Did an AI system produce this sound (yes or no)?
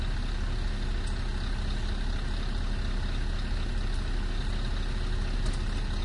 no